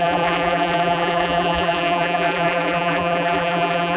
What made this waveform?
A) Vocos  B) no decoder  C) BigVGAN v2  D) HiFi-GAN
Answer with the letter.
C